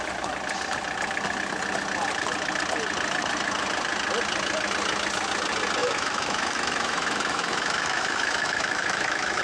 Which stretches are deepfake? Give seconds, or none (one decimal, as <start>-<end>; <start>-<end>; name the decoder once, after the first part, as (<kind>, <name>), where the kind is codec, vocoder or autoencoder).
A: 5.8-9.4 (autoencoder, DAC-VAE)